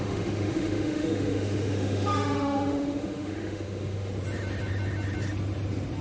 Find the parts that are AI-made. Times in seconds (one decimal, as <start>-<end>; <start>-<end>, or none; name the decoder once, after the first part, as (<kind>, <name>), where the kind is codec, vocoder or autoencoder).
0.0-4.1 (autoencoder, DAC-VAE)